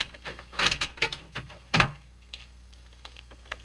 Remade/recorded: remade